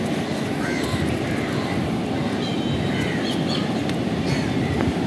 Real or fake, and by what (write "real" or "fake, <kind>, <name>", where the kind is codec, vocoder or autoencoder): real